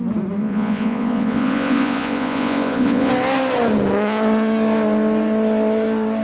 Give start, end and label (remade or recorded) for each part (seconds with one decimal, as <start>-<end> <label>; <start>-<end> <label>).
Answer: 0.0-0.4 recorded; 0.4-3.1 remade; 3.1-6.2 recorded